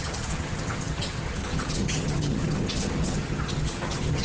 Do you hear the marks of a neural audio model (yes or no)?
yes